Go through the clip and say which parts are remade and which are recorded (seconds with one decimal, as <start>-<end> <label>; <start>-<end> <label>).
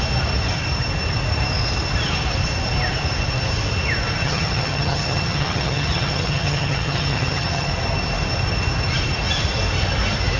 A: 0.0-4.2 recorded; 4.2-7.7 remade; 7.7-10.4 recorded